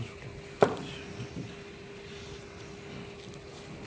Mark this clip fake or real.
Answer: real